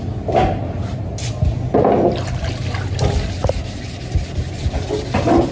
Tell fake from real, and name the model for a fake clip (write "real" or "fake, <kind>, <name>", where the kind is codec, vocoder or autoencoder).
real